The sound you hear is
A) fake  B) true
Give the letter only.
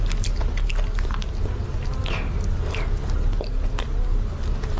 B